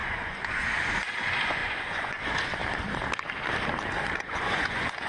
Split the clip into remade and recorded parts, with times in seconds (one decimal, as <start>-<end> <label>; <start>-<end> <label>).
0.0-2.6 remade; 2.6-4.2 recorded; 4.2-5.1 remade

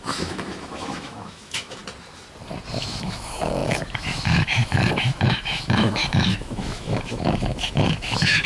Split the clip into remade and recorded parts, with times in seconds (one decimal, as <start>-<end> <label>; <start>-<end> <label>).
0.0-1.8 remade; 1.8-2.8 recorded; 2.8-8.5 remade